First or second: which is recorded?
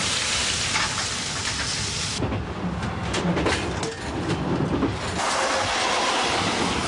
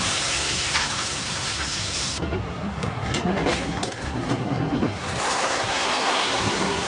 first